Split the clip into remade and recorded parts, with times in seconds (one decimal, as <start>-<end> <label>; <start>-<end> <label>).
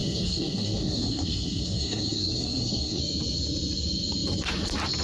0.0-3.0 remade; 3.0-5.0 recorded